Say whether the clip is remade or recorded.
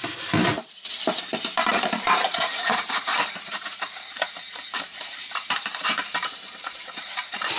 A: remade